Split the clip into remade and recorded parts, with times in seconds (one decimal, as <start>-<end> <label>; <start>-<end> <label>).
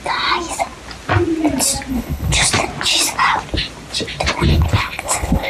0.0-1.9 recorded; 1.9-2.5 remade; 2.5-4.5 recorded; 4.5-5.5 remade